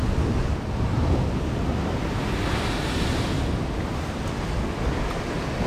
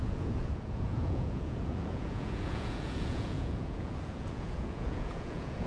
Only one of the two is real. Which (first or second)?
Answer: first